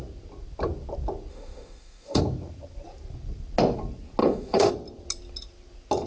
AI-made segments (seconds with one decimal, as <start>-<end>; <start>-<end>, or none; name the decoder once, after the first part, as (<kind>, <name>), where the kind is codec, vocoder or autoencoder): 1.3-2.2 (autoencoder, DAC-VAE); 4.2-4.7